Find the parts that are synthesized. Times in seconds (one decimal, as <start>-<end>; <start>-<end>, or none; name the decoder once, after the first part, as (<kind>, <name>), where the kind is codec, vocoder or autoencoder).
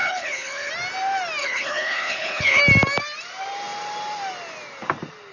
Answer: 0.0-0.7 (codec, HILCodec); 1.4-2.6